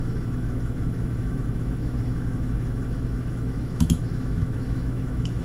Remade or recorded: remade